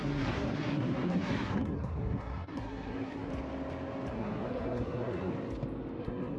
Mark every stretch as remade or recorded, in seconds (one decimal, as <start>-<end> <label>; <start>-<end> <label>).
0.0-3.3 remade; 3.3-4.1 recorded; 4.1-5.3 remade; 5.3-6.0 recorded; 6.0-6.4 remade